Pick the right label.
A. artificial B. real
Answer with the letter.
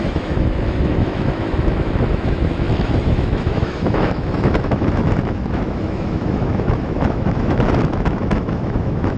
A